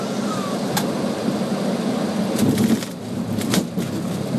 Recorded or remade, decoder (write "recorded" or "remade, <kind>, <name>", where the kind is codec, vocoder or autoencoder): recorded